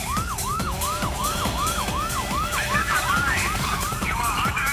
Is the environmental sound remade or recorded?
remade